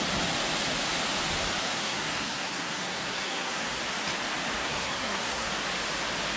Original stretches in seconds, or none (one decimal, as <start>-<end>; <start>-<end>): 0.0-1.6; 3.8-4.6; 5.5-6.4